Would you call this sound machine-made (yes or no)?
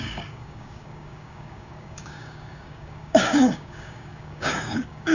yes